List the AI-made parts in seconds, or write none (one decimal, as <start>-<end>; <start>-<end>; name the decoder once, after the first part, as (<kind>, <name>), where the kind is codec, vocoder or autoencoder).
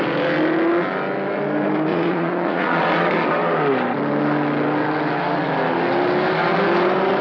1.9-2.8 (vocoder, Vocos)